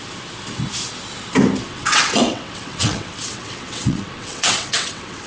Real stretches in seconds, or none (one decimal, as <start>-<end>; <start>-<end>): 0.0-1.7